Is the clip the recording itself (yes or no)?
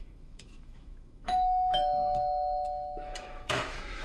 no